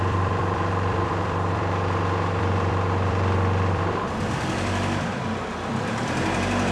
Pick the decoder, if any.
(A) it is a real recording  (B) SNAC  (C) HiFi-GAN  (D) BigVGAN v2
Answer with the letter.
D